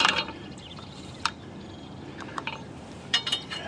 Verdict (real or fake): fake